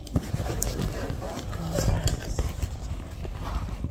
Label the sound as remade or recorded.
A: recorded